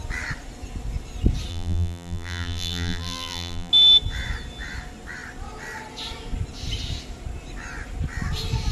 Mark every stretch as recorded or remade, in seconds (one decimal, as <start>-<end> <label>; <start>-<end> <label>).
0.0-1.5 recorded; 1.5-3.7 remade; 3.7-8.7 recorded